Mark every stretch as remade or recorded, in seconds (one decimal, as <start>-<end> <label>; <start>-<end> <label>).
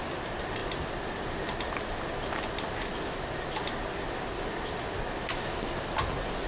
0.0-6.5 recorded